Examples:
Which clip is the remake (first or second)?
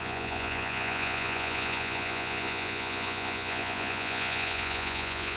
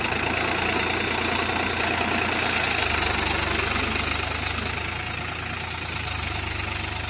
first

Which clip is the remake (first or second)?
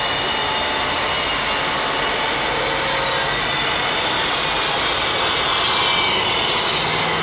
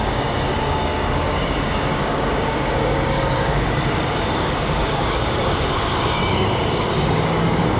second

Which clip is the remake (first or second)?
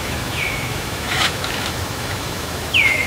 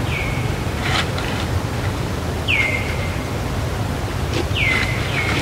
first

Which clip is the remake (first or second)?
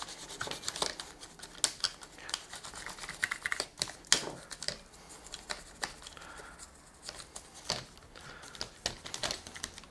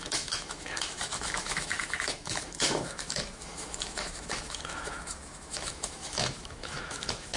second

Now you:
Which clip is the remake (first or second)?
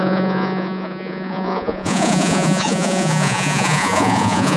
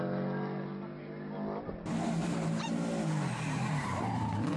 first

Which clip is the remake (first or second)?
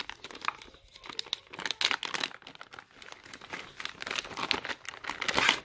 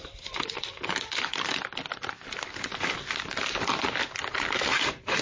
second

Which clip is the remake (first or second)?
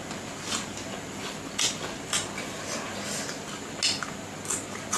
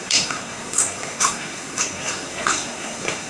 second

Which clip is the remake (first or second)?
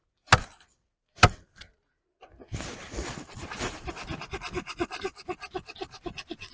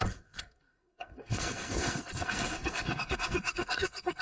second